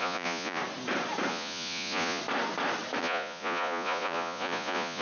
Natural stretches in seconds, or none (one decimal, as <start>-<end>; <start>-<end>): 0.6-1.3; 2.2-3.0

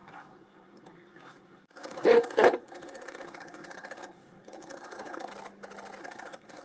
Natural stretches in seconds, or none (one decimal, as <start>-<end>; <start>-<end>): 5.3-6.0

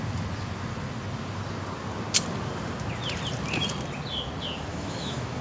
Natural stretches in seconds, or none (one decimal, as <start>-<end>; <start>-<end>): 0.0-4.7